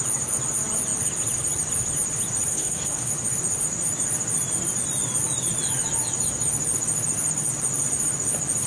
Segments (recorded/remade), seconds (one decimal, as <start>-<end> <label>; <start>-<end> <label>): 0.0-2.5 recorded; 2.5-3.1 remade; 3.1-8.7 recorded